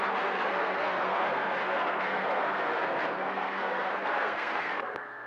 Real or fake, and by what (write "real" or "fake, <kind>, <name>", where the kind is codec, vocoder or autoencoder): fake, codec, SNAC